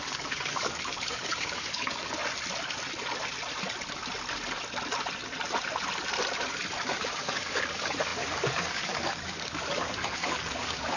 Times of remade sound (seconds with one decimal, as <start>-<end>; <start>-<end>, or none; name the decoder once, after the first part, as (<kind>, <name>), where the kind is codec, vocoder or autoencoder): 0.0-2.2 (codec, DAC); 6.8-11.0